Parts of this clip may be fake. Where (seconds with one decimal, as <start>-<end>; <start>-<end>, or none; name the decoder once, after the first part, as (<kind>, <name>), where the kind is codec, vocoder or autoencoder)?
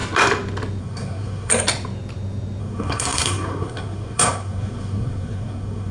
0.8-1.5 (codec, SNAC); 2.6-5.9